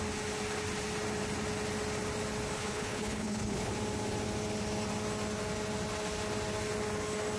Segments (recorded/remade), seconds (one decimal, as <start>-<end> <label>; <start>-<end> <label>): 0.0-2.6 recorded; 2.6-3.7 remade; 3.7-7.4 recorded